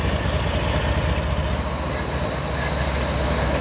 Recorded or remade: recorded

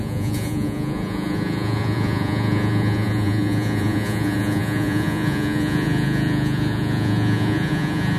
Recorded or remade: remade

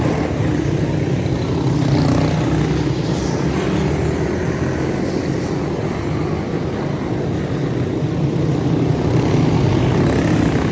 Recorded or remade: recorded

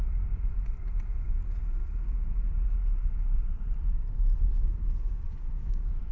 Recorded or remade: remade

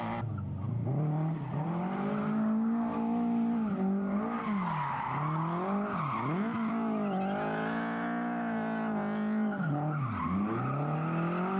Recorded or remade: recorded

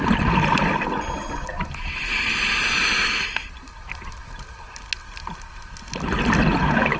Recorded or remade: recorded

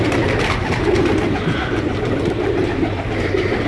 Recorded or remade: recorded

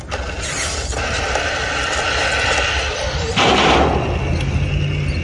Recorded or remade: recorded